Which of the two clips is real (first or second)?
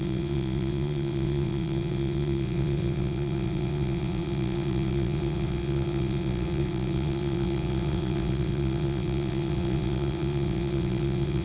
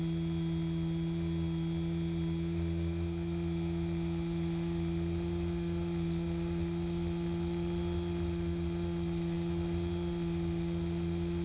second